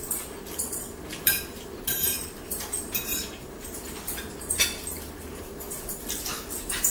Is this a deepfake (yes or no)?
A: yes